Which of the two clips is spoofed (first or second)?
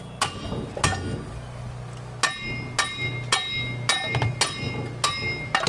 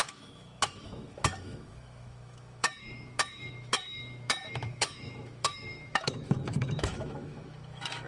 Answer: second